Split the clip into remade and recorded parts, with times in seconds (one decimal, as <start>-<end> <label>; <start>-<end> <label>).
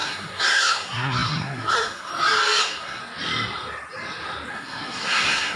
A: 0.0-2.1 remade; 2.1-2.6 recorded; 2.6-3.0 remade; 3.0-4.5 recorded; 4.5-5.6 remade